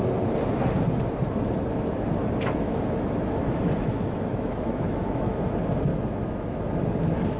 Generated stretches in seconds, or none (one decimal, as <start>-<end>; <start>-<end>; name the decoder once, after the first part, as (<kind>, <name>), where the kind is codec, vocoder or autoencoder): 2.2-5.4 (autoencoder, DAC-VAE); 5.9-6.6